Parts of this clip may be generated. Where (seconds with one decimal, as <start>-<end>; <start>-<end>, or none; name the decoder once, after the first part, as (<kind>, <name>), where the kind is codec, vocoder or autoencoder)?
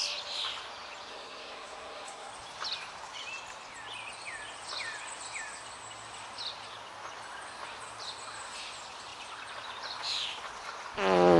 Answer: 1.1-2.3 (codec, SNAC)